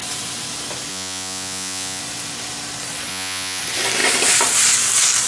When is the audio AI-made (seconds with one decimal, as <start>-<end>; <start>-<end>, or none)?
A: 0.9-2.0; 3.1-3.6